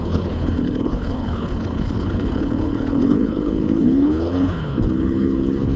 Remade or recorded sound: remade